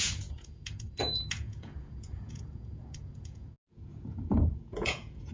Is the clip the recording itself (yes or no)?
no